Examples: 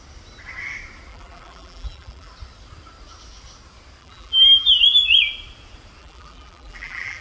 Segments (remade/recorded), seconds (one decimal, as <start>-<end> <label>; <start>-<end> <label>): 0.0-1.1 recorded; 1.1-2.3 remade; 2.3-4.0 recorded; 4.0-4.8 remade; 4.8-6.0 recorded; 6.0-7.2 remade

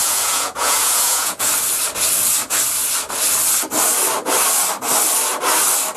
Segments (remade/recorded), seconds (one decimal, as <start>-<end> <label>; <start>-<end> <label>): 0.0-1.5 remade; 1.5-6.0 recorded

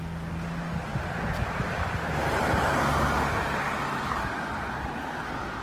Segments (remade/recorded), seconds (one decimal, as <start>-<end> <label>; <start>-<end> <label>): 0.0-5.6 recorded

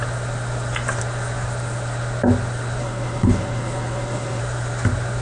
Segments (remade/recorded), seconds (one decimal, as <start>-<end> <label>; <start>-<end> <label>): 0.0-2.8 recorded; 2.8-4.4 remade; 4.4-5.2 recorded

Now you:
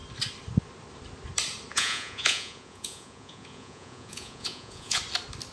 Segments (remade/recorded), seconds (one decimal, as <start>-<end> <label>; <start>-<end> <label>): 0.0-1.7 recorded; 1.7-5.0 remade; 5.0-5.5 recorded

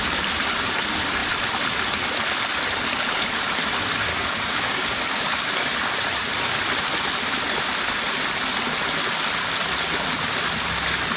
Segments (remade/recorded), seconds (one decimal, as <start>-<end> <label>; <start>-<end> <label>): 0.0-4.1 recorded; 4.1-5.5 remade; 5.5-11.2 recorded

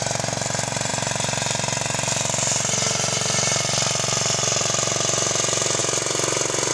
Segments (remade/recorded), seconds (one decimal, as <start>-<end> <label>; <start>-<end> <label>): 0.0-6.7 recorded